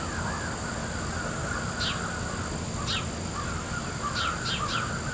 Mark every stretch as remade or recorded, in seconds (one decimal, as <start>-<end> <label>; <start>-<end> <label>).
0.0-5.1 recorded